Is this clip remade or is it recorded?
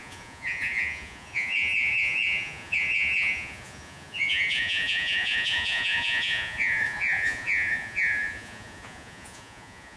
remade